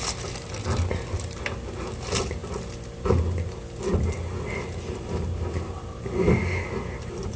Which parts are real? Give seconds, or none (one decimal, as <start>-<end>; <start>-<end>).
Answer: 0.0-7.4